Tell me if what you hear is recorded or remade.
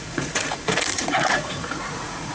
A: remade